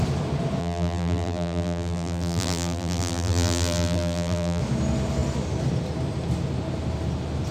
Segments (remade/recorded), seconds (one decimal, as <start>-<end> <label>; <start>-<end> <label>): 0.0-0.6 recorded; 0.6-4.6 remade; 4.6-7.5 recorded